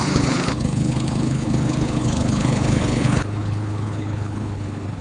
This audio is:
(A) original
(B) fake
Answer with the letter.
B